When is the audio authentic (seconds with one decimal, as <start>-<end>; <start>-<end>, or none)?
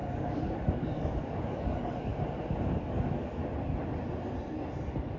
2.1-2.7; 3.4-5.2